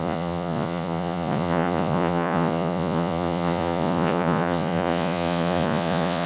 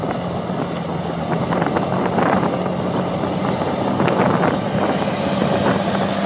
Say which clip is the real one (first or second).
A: second